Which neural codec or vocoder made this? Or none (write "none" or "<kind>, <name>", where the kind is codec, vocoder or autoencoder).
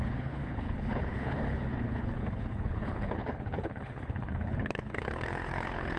codec, HILCodec